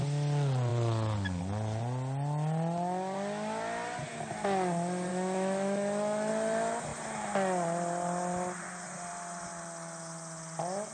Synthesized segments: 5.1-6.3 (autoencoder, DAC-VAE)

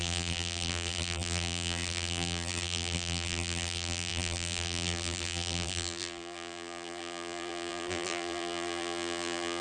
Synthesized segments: 0.0-9.6 (vocoder, BigVGAN v2)